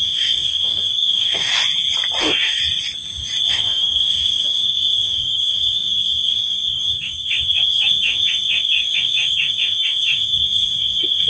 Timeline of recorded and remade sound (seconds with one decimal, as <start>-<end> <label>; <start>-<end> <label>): 0.0-1.5 remade; 1.5-2.2 recorded; 2.2-2.6 remade; 2.6-3.5 recorded; 3.5-11.3 remade